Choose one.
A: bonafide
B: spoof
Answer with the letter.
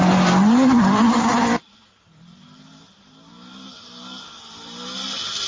A